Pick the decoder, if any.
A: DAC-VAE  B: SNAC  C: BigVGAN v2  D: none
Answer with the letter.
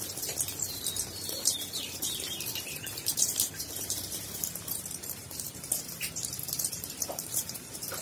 C